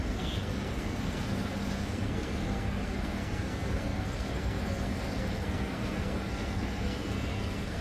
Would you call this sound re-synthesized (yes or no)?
yes